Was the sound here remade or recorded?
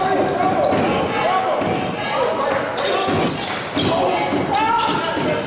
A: recorded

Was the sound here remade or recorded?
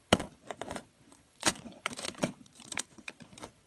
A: remade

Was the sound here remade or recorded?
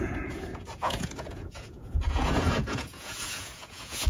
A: remade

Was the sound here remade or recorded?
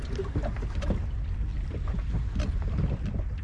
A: recorded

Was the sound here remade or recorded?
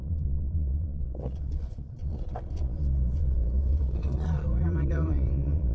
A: remade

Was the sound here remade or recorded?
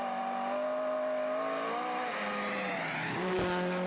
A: recorded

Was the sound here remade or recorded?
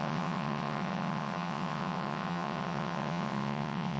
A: remade